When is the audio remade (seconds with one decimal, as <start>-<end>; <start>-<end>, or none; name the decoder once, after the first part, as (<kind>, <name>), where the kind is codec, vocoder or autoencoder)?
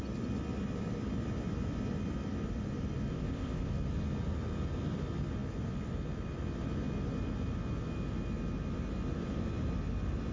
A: 3.1-3.7 (codec, ZipCodec)